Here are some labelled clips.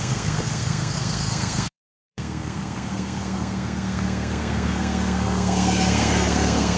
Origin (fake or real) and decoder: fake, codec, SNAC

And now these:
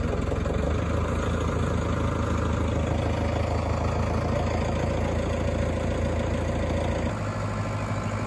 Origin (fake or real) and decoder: real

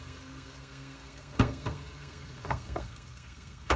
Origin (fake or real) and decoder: fake, codec, SNAC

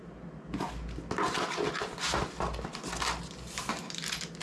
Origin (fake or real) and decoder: real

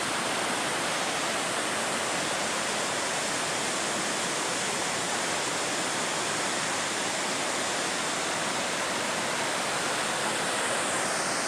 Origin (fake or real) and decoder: real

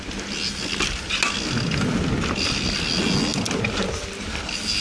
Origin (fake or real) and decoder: real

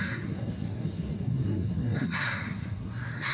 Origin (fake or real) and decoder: fake, codec, SNAC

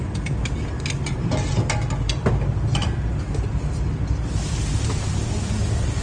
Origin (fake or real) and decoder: real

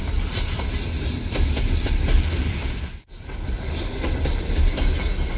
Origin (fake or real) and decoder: real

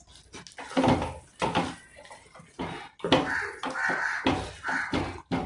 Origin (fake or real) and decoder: real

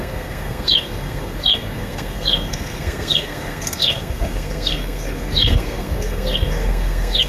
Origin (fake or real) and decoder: fake, codec, SNAC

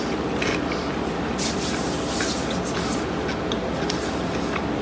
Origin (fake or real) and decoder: real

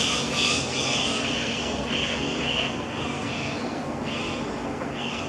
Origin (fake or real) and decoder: fake, codec, SNAC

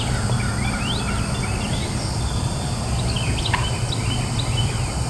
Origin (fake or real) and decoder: real